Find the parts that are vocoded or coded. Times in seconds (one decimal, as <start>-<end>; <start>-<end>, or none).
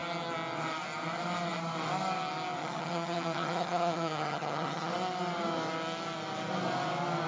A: 2.6-4.9